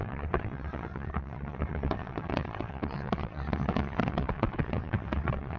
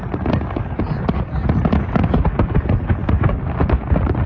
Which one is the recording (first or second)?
second